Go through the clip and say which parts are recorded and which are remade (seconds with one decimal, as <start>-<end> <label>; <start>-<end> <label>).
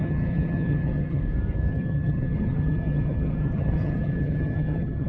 0.0-1.2 remade; 1.2-1.7 recorded; 1.7-5.1 remade